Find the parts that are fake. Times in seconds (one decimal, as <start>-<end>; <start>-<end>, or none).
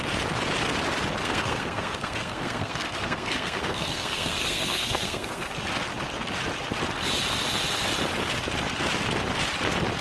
1.2-5.6